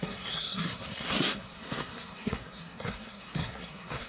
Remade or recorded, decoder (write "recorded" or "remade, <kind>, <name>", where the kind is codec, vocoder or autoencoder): remade, codec, SNAC